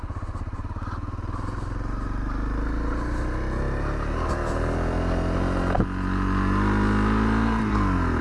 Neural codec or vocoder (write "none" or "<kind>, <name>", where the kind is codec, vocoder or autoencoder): none